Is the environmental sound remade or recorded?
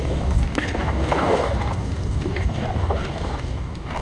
remade